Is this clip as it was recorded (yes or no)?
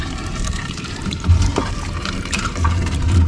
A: no